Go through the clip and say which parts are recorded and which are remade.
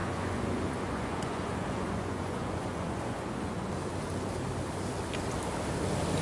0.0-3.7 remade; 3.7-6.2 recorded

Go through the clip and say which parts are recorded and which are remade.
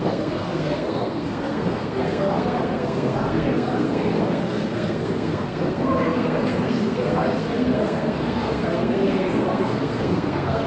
0.0-10.7 remade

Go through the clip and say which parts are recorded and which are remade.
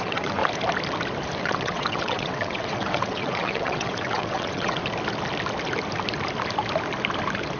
0.0-0.4 remade; 0.4-1.4 recorded; 1.4-4.8 remade; 4.8-7.6 recorded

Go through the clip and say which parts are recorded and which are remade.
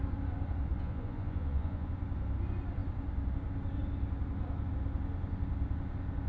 0.0-0.7 recorded; 0.7-1.9 remade; 1.9-6.3 recorded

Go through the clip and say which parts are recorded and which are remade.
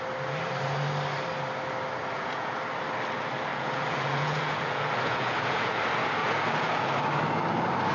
0.0-2.0 recorded; 2.0-2.6 remade; 2.6-3.5 recorded; 3.5-5.8 remade; 5.8-6.2 recorded; 6.2-6.9 remade; 6.9-7.9 recorded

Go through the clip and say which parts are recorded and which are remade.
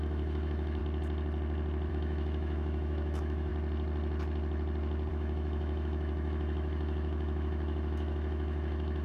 0.0-0.8 remade; 0.8-1.9 recorded; 1.9-3.5 remade; 3.5-5.1 recorded; 5.1-9.0 remade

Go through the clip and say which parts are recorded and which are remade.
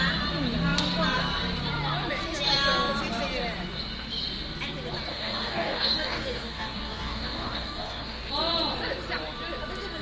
0.0-5.1 recorded; 5.1-8.3 remade; 8.3-10.0 recorded